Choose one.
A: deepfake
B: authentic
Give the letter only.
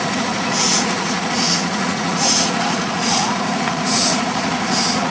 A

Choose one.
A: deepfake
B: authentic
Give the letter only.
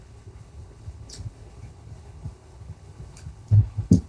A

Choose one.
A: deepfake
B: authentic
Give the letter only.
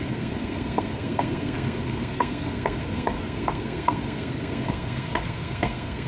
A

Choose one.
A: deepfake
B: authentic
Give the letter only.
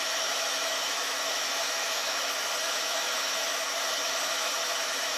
A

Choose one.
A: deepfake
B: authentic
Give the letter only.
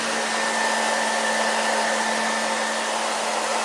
B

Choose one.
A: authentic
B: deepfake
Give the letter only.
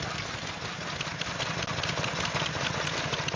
A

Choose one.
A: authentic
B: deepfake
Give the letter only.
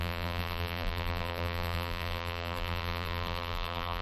B